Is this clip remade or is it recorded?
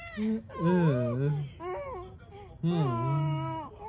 recorded